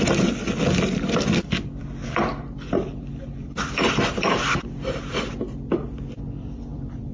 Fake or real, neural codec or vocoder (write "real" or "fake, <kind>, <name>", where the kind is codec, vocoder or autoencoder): fake, vocoder, BigVGAN v2